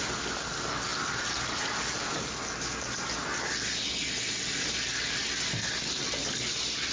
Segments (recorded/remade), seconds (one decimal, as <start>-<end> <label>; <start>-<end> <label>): 0.0-6.9 recorded